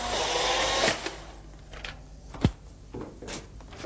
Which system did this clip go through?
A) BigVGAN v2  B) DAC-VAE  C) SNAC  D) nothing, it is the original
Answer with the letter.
D